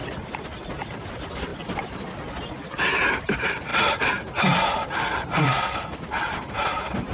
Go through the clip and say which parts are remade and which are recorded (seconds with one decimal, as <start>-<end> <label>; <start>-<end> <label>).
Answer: 0.0-1.1 recorded; 1.1-1.5 remade; 1.5-3.2 recorded; 3.2-3.7 remade; 3.7-5.4 recorded; 5.4-7.1 remade